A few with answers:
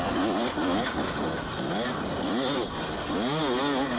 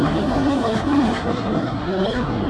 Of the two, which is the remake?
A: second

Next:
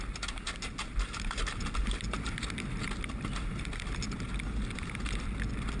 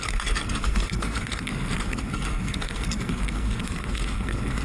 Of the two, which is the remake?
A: second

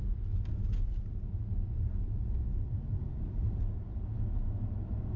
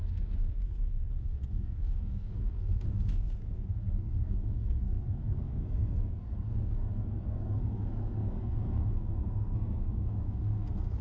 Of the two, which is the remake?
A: second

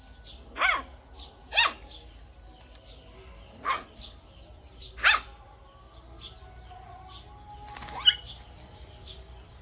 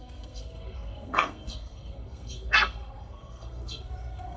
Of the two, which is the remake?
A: second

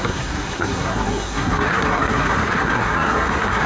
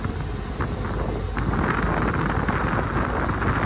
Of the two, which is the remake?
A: first